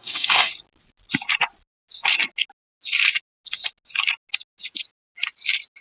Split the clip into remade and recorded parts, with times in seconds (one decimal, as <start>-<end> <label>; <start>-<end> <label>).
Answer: 0.0-0.5 remade; 0.5-5.8 recorded